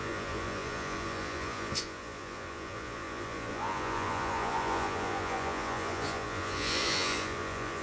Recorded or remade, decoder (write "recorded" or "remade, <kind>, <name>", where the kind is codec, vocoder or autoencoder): remade, vocoder, Vocos